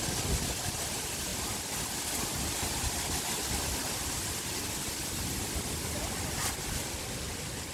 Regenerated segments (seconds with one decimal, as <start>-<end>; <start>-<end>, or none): none